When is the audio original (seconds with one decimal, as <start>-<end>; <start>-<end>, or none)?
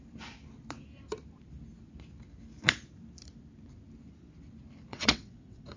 0.0-4.9